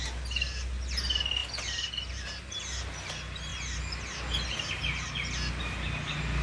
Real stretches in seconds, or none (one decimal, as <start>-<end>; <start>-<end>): 0.0-6.4